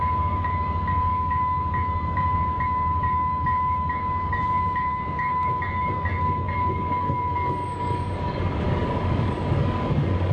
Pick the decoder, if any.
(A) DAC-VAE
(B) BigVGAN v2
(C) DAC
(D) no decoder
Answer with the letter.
C